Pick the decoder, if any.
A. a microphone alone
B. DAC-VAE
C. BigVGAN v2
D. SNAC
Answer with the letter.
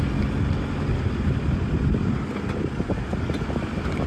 A